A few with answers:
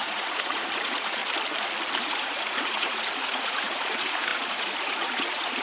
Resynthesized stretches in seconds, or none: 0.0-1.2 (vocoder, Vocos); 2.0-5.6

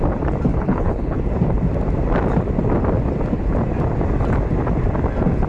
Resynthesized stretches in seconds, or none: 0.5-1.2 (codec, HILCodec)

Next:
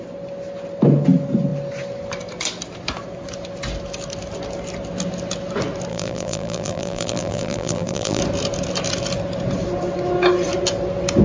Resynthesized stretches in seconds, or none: 5.9-8.2 (vocoder, BigVGAN v2)

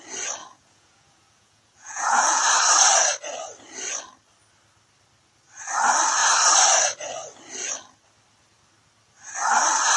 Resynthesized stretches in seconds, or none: 0.4-2.4 (vocoder, Vocos)